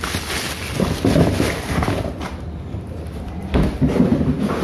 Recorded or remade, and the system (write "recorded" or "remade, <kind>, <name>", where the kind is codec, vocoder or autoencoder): recorded